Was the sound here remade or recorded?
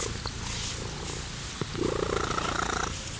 recorded